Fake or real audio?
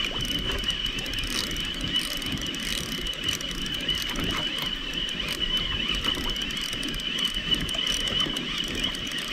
real